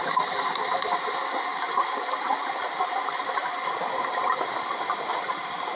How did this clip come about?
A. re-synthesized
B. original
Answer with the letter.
B